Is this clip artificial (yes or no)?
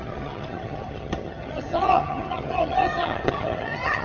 yes